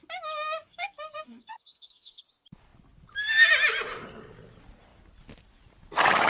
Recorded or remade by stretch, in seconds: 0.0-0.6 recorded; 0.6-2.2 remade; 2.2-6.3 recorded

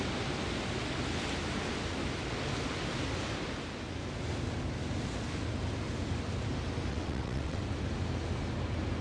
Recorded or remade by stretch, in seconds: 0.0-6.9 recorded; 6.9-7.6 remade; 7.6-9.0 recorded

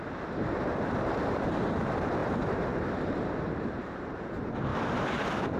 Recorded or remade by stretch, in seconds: 0.0-5.6 remade

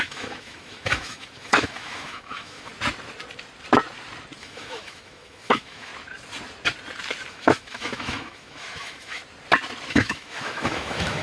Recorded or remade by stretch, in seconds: 0.0-2.7 remade; 2.7-4.4 recorded; 4.4-5.9 remade; 5.9-7.3 recorded; 7.3-9.2 remade; 9.2-9.9 recorded; 9.9-11.2 remade

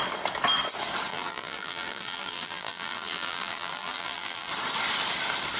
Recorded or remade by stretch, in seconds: 0.0-1.1 recorded; 1.1-4.5 remade; 4.5-5.6 recorded

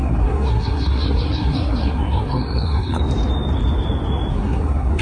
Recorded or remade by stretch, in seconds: 0.0-3.0 remade; 3.0-4.3 recorded; 4.3-5.0 remade

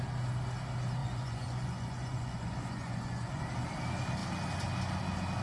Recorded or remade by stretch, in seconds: 0.0-1.0 recorded; 1.0-3.4 remade; 3.4-5.4 recorded

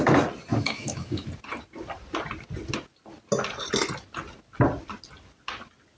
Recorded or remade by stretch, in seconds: 0.0-0.5 recorded; 0.5-1.3 remade; 1.3-6.0 recorded